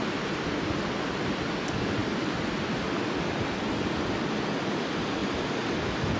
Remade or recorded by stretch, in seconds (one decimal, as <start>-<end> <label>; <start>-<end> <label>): 0.0-5.2 recorded; 5.2-5.7 remade; 5.7-6.2 recorded